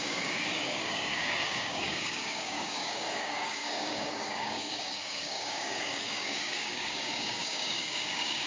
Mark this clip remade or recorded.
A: remade